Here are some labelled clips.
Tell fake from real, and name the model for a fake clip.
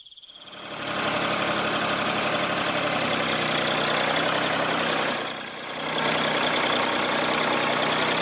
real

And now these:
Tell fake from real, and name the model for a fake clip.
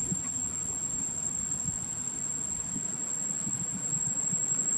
real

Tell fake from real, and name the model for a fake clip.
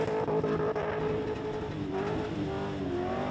real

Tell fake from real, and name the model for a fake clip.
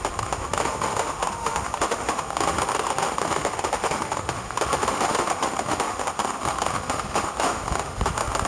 fake, autoencoder, DAC-VAE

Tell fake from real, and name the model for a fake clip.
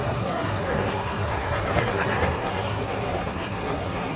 fake, codec, SNAC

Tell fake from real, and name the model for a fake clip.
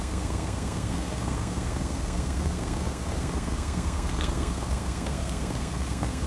fake, codec, SNAC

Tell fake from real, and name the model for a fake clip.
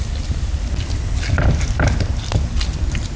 real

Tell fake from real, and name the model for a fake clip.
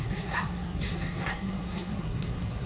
fake, codec, SNAC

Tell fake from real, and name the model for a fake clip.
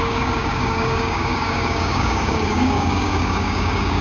fake, codec, DAC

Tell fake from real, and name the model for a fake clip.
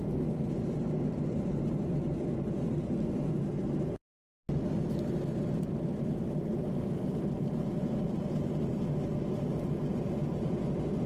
real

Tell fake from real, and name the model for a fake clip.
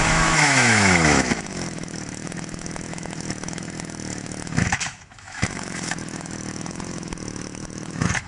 fake, autoencoder, DAC-VAE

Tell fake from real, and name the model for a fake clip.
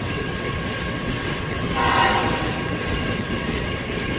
fake, vocoder, WaveNeXt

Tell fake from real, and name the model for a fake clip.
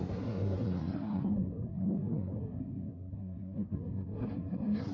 fake, codec, SNAC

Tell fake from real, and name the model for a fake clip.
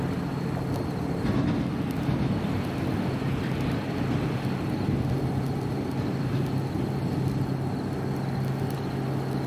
real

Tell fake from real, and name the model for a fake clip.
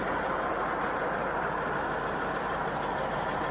real